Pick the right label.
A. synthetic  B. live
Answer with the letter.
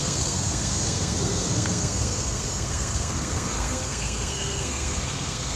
A